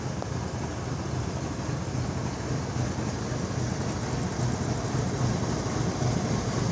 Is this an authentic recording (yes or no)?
yes